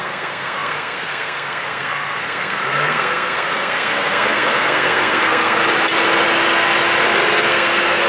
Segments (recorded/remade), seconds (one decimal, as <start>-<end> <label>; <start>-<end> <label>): 0.0-5.6 remade; 5.6-7.5 recorded; 7.5-8.1 remade